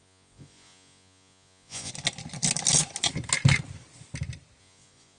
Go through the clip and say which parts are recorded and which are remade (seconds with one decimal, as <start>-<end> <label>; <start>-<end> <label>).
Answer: 0.0-1.9 remade; 1.9-4.6 recorded; 4.6-5.2 remade